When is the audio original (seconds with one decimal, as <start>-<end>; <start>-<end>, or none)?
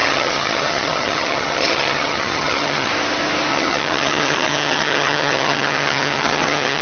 2.9-3.5